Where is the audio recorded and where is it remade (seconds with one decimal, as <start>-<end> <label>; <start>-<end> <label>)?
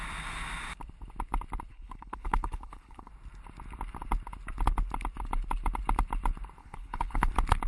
0.0-1.7 recorded; 1.7-3.1 remade; 3.1-6.6 recorded; 6.6-7.3 remade; 7.3-7.7 recorded